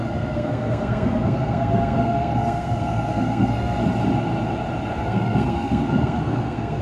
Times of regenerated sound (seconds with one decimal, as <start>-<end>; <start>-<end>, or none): 0.0-3.8; 5.0-6.8